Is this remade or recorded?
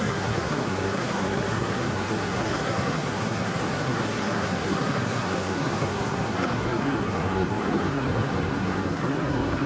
remade